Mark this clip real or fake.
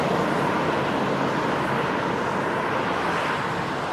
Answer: real